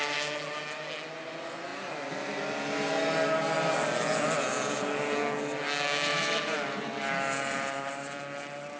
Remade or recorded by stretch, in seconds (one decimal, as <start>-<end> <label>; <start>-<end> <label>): 0.0-6.1 recorded; 6.1-7.0 remade; 7.0-8.8 recorded